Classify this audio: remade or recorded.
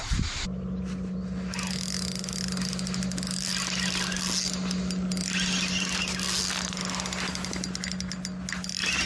recorded